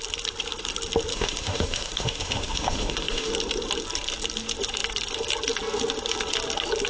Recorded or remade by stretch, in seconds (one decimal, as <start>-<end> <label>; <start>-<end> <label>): 0.0-1.1 recorded; 1.1-3.3 remade; 3.3-6.9 recorded